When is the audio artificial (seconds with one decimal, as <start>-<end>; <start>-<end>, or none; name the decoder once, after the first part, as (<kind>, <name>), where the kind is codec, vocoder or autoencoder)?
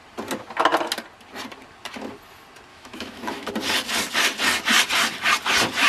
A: 2.7-3.5 (autoencoder, DAC-VAE)